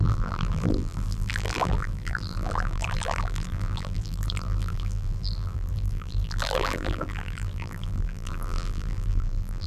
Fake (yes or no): yes